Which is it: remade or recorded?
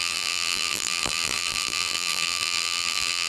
remade